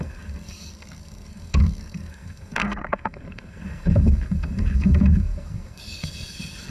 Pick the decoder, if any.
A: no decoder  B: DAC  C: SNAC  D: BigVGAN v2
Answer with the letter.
C